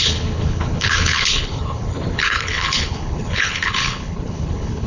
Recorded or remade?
remade